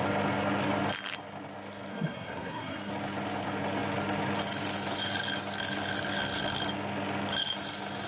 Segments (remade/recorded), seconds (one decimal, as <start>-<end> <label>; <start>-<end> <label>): 0.0-1.9 recorded; 1.9-2.9 remade; 2.9-8.1 recorded